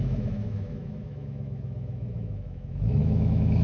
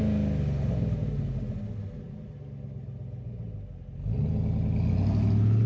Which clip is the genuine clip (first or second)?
second